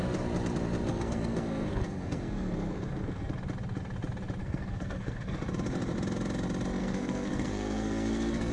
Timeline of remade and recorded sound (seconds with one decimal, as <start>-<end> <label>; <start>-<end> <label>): 0.0-0.9 recorded; 0.9-3.3 remade; 3.3-4.4 recorded; 4.4-5.4 remade; 5.4-6.8 recorded; 6.8-8.5 remade